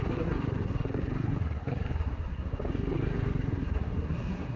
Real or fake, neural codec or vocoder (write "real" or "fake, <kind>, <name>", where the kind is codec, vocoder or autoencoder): fake, codec, SNAC